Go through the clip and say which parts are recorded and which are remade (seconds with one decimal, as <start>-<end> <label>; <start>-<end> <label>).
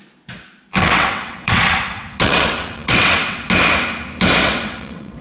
0.0-0.8 recorded; 0.8-3.5 remade; 3.5-4.4 recorded; 4.4-5.2 remade